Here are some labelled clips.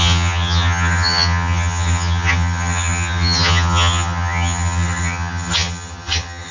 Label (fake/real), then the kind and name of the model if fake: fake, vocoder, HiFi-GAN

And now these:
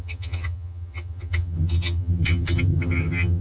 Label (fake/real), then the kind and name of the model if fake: fake, vocoder, HiFi-GAN